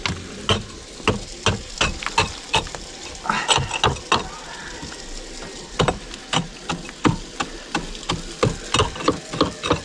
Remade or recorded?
recorded